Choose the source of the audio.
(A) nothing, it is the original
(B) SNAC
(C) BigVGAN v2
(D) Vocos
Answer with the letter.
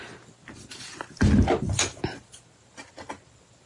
A